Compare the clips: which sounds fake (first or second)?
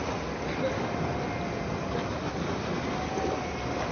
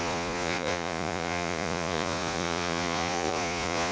second